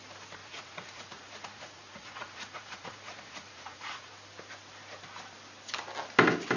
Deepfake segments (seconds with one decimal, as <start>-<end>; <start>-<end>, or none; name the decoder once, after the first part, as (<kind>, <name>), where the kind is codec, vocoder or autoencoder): 0.4-4.1 (vocoder, Vocos)